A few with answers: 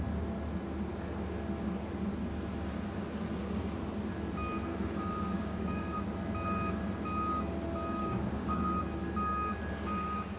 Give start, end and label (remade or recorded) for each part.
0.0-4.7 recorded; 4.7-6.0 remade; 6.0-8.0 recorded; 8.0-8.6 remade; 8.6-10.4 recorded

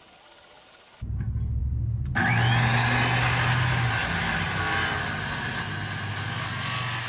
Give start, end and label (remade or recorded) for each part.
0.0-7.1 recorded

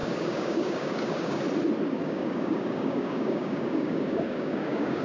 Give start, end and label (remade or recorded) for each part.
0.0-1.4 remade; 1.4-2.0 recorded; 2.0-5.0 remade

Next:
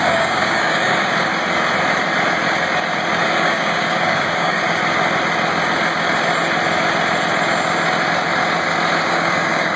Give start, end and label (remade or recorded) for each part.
0.0-1.3 remade; 1.3-3.2 recorded; 3.2-4.8 remade; 4.8-9.1 recorded; 9.1-9.8 remade

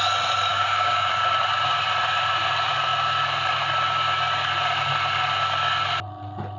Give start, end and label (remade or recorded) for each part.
0.0-0.5 recorded; 0.5-1.1 remade; 1.1-6.6 recorded

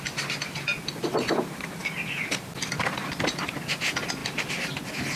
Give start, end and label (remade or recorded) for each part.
0.0-5.2 recorded